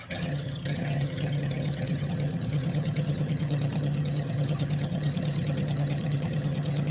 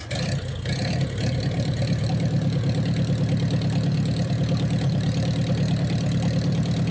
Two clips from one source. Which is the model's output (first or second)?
first